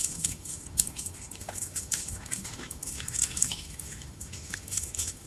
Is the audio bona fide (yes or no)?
no